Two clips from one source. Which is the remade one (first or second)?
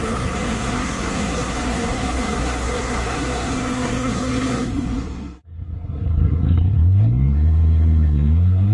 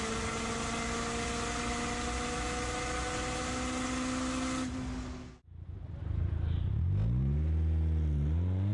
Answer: first